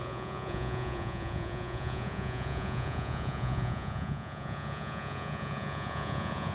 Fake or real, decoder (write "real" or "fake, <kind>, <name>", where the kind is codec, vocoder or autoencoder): fake, vocoder, Vocos